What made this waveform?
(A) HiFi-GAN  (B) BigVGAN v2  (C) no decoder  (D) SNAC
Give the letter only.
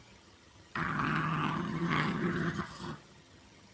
A